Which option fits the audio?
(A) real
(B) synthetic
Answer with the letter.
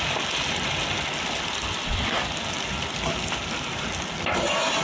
A